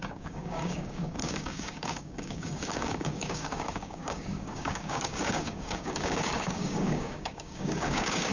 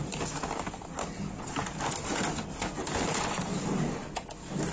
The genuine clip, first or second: second